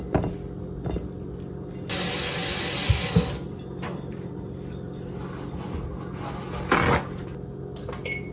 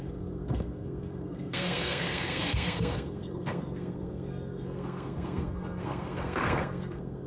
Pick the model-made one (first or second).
second